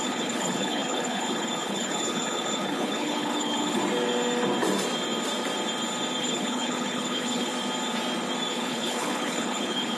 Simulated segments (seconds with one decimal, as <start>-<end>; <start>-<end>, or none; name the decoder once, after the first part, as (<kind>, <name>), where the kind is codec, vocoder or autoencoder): 0.0-3.8 (codec, HILCodec); 6.2-7.5; 8.5-10.0